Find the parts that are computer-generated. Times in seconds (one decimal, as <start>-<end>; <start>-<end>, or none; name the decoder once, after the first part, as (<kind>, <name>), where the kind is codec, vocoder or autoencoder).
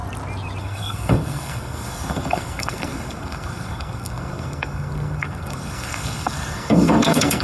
0.6-7.4 (codec, SNAC)